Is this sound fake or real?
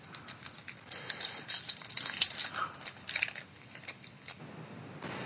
real